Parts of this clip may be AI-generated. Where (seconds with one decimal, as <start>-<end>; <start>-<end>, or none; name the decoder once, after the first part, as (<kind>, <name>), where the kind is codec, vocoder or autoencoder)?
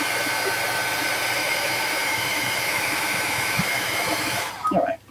1.4-4.5 (autoencoder, DAC-VAE)